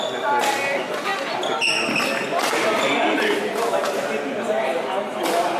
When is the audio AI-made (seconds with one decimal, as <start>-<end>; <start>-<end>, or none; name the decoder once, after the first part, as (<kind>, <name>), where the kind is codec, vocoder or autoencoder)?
none